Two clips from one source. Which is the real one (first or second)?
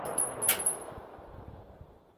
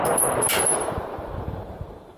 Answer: first